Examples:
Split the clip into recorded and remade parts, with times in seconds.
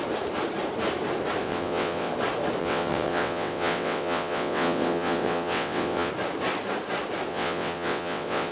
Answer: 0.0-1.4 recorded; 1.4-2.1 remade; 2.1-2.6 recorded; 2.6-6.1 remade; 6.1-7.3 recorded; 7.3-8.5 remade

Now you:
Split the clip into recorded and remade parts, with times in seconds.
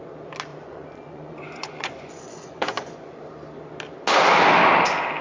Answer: 0.0-0.5 recorded; 0.5-3.3 remade; 3.3-5.2 recorded